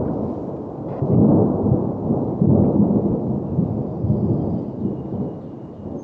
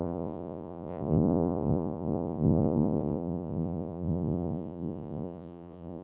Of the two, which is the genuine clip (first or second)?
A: first